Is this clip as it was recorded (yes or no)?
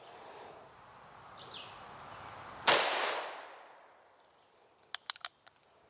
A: yes